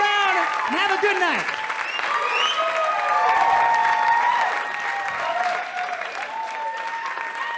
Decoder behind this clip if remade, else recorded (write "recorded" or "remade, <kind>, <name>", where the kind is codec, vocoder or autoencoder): recorded